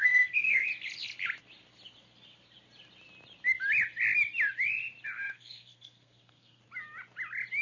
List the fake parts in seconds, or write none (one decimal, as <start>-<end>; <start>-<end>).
0.0-0.7; 5.3-6.6